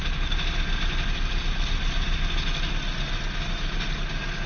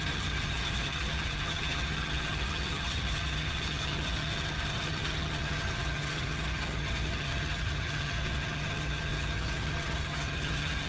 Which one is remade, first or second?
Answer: second